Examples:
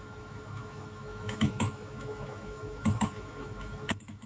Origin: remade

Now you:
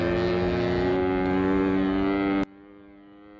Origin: recorded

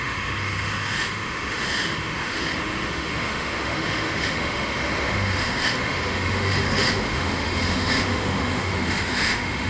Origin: remade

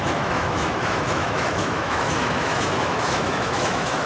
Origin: remade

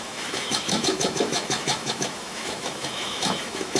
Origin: remade